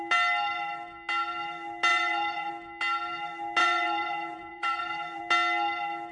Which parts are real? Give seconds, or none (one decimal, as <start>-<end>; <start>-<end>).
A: 0.0-1.9; 2.5-3.6; 5.2-6.1

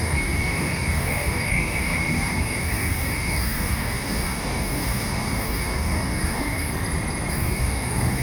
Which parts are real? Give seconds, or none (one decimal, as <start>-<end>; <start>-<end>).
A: 6.7-7.3

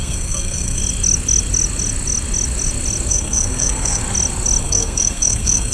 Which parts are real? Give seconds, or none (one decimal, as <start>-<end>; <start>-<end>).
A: 0.8-3.1; 4.0-4.6

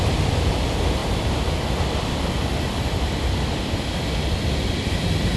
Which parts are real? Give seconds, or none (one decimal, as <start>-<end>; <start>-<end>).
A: 0.0-5.4

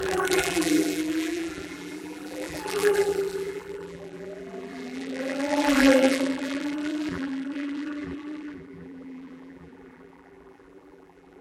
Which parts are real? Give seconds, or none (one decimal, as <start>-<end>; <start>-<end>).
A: none

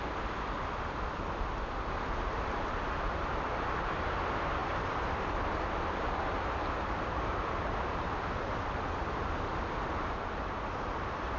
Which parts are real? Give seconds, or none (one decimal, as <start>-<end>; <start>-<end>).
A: 0.0-11.4

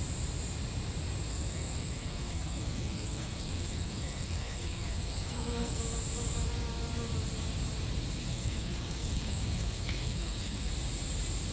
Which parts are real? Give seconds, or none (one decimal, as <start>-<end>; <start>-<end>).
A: 0.0-1.3; 5.8-8.2; 10.7-11.5